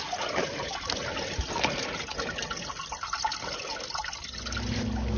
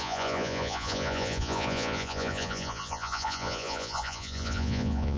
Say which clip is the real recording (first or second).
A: first